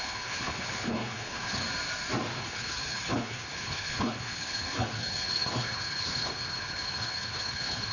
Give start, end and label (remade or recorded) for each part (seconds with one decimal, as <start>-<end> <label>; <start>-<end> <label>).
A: 0.0-1.6 remade; 1.6-2.4 recorded; 2.4-7.9 remade